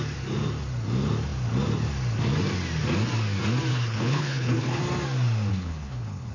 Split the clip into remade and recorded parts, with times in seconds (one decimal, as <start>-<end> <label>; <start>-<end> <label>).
0.0-3.7 recorded; 3.7-4.8 remade; 4.8-5.5 recorded; 5.5-6.3 remade